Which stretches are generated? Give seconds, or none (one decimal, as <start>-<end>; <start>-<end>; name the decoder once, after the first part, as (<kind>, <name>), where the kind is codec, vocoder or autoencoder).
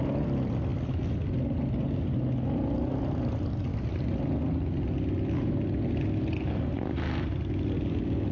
none